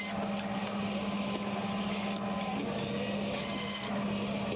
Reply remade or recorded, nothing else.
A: recorded